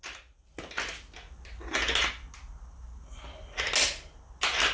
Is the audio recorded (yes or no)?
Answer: yes